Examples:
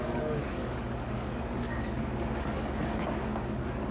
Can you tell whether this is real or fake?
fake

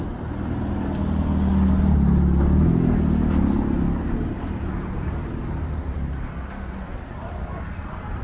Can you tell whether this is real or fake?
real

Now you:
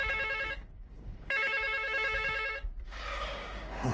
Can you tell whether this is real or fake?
fake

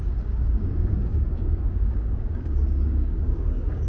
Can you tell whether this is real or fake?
fake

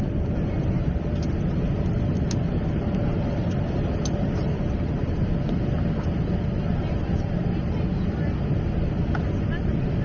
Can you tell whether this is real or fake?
real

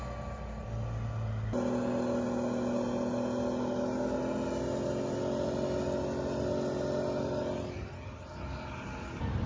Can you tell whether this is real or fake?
real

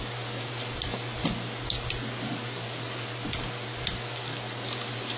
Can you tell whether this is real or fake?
real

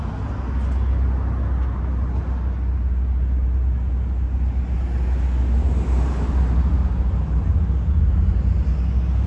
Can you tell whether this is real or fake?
real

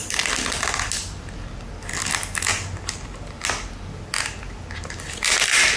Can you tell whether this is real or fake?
real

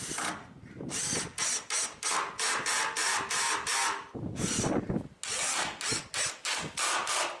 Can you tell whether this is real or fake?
real